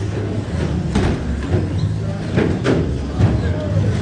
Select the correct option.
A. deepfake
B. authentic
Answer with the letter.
B